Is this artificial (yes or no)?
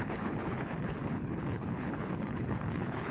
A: yes